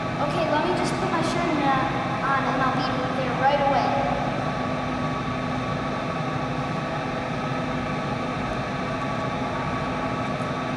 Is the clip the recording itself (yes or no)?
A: yes